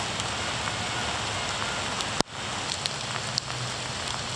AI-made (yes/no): no